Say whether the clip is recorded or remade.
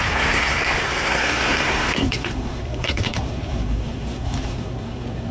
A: remade